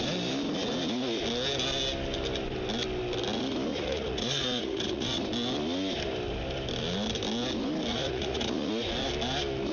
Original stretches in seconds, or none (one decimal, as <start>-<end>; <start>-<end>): 0.0-3.7; 5.2-7.9; 8.7-9.7